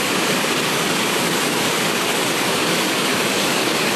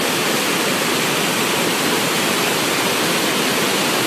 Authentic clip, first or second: second